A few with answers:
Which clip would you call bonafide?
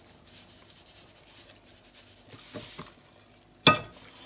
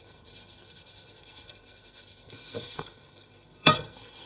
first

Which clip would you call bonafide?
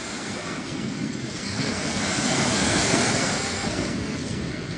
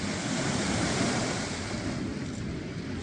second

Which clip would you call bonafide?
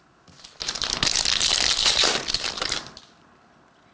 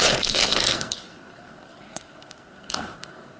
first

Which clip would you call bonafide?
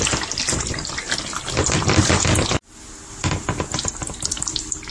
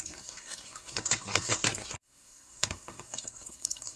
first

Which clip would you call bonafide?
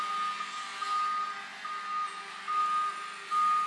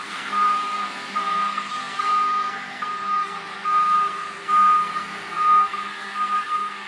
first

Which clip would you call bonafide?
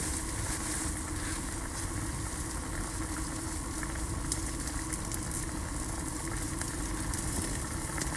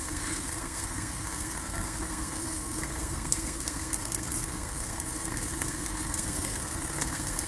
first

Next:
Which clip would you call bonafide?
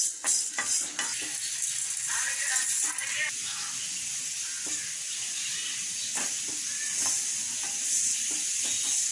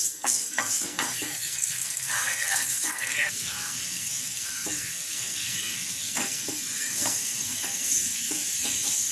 first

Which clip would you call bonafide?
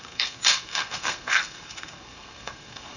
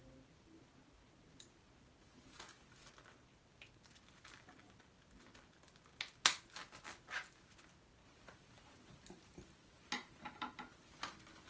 second